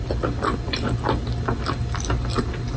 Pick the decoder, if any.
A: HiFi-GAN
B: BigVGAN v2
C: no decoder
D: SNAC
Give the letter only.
C